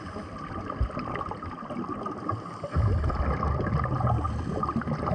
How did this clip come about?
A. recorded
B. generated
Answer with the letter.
A